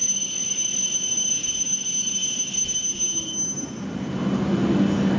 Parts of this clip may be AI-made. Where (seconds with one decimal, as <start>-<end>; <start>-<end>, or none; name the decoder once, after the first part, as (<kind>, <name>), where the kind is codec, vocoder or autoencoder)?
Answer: none